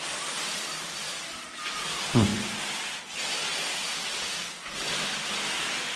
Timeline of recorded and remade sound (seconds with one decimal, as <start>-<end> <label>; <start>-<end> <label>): 0.0-6.0 recorded

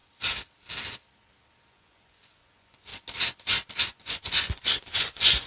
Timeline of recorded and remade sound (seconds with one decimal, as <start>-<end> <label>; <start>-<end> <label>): 0.0-1.7 recorded; 1.7-2.9 remade; 2.9-3.8 recorded; 3.8-5.5 remade

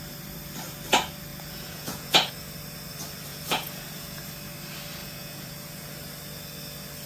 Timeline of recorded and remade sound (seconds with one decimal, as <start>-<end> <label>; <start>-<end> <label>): 0.0-1.3 recorded; 1.3-2.3 remade; 2.3-3.3 recorded; 3.3-4.2 remade; 4.2-5.0 recorded; 5.0-5.9 remade; 5.9-7.1 recorded